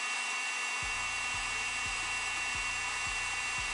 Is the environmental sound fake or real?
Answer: fake